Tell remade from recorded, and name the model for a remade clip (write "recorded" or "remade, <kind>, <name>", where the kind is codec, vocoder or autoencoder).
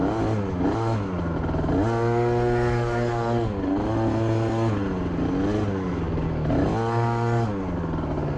recorded